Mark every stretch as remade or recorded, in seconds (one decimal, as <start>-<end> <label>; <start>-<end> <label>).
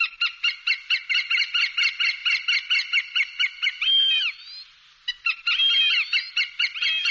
0.0-7.1 recorded